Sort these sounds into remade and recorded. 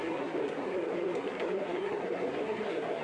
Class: remade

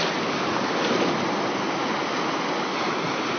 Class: recorded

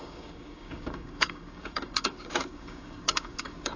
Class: remade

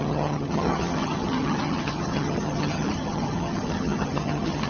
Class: remade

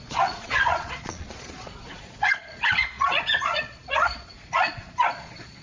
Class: remade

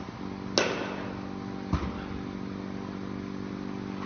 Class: recorded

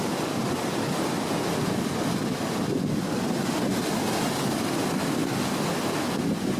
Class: recorded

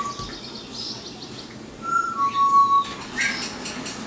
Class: recorded